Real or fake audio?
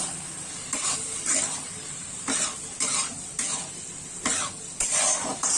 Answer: real